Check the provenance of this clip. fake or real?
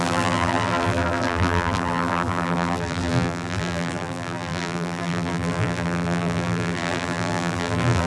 fake